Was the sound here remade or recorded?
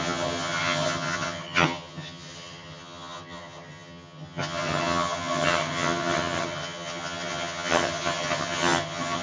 remade